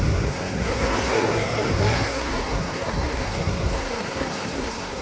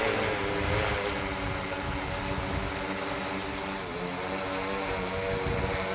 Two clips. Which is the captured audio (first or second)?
second